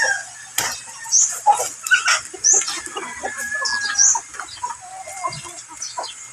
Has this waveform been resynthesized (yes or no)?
no